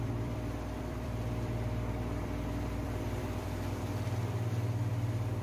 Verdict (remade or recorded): remade